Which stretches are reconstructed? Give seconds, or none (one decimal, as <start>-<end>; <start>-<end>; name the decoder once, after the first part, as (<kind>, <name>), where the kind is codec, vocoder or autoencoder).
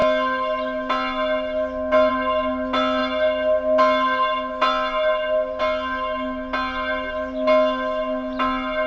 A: none